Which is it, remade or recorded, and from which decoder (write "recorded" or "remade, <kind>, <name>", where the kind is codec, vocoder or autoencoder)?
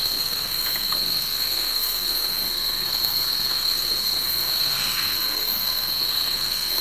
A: remade, codec, SNAC